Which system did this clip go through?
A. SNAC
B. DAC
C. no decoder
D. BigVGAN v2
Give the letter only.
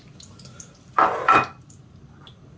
D